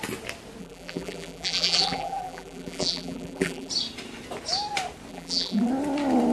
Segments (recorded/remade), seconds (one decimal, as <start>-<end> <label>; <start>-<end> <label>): 0.0-0.6 recorded; 0.6-3.7 remade; 3.7-5.1 recorded; 5.1-5.7 remade; 5.7-6.3 recorded